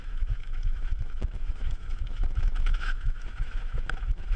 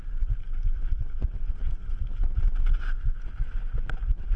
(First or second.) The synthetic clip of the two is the first